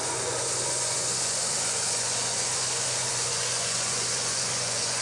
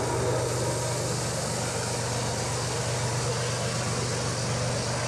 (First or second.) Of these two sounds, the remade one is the first